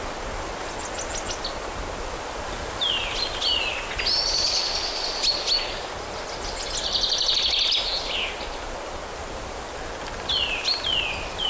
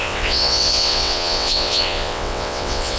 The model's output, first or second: second